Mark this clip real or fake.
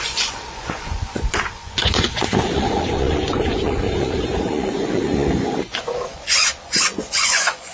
fake